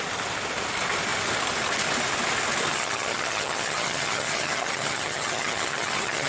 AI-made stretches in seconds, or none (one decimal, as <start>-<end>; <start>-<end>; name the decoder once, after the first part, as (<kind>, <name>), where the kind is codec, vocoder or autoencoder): 2.7-6.3 (vocoder, HiFi-GAN)

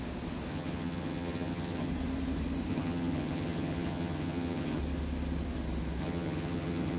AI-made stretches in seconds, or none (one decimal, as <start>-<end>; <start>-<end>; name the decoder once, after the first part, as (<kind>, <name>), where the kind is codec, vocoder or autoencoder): 0.5-1.9 (vocoder, HiFi-GAN); 2.7-4.8; 6.0-7.0

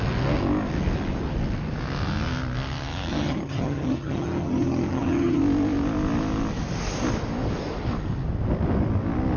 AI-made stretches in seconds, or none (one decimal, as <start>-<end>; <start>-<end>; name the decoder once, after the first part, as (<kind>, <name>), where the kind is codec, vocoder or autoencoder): 3.1-5.4 (vocoder, HiFi-GAN)